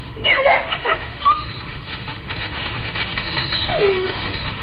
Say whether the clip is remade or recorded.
remade